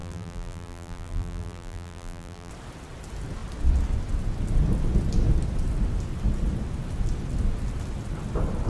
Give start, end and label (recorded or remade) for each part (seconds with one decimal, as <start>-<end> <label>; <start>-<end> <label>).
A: 0.0-2.5 remade; 2.5-8.7 recorded